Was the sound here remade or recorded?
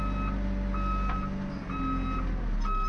recorded